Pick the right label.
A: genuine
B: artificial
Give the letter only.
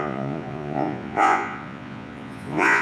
B